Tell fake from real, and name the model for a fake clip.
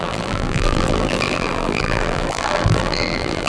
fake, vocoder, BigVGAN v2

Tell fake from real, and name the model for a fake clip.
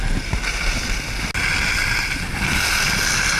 real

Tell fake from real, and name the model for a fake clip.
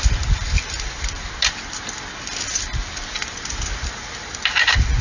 fake, vocoder, BigVGAN v2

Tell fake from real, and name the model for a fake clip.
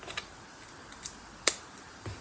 fake, vocoder, BigVGAN v2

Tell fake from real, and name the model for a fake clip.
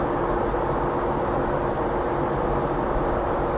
real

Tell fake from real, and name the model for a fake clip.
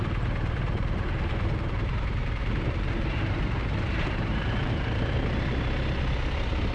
fake, vocoder, BigVGAN v2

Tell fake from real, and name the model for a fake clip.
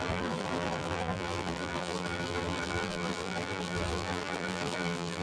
fake, vocoder, BigVGAN v2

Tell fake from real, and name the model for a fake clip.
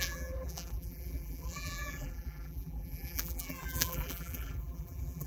fake, vocoder, BigVGAN v2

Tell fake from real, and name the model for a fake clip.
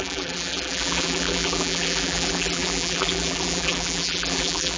fake, vocoder, BigVGAN v2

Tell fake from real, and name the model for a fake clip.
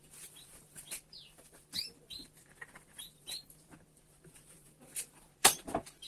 fake, vocoder, BigVGAN v2